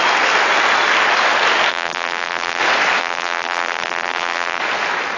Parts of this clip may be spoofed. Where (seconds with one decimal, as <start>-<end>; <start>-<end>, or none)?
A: 1.7-2.6; 3.0-4.6